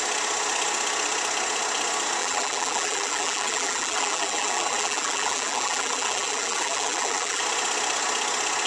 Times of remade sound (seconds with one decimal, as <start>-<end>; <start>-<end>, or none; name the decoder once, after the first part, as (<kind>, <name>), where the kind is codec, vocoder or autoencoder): 2.2-7.4 (vocoder, BigVGAN v2)